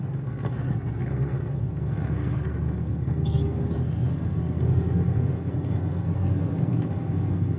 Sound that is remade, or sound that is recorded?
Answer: remade